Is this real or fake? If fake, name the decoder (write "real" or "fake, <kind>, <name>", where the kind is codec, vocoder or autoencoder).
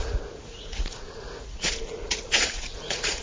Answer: fake, vocoder, Vocos